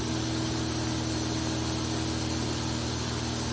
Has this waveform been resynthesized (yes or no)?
no